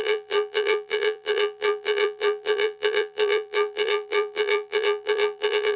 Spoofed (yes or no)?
yes